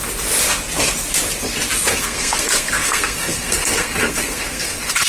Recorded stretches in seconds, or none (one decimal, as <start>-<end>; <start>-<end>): 0.0-1.9